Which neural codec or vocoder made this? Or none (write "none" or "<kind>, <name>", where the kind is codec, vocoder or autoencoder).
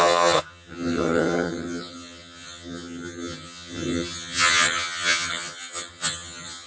vocoder, HiFi-GAN